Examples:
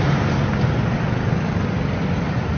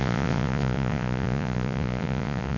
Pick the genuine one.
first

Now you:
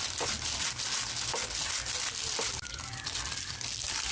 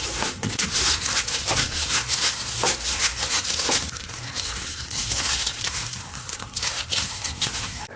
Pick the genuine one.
first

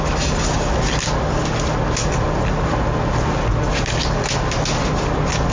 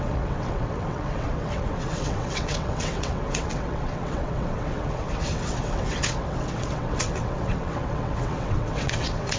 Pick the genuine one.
first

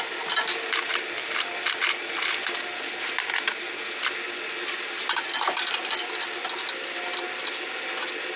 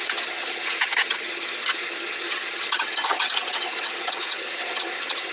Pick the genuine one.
first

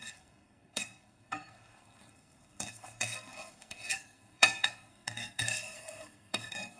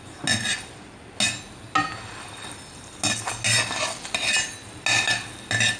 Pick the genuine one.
second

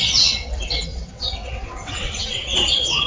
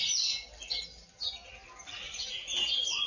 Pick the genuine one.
second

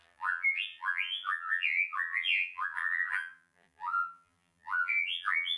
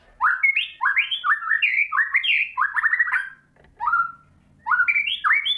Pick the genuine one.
second